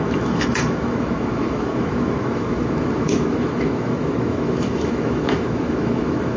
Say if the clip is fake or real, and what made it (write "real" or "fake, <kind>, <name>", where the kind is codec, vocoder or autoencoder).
fake, autoencoder, DAC-VAE